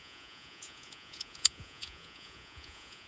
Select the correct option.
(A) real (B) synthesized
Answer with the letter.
B